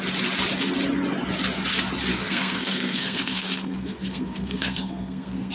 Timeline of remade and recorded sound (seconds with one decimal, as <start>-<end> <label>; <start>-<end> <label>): 0.0-2.1 recorded; 2.1-5.5 remade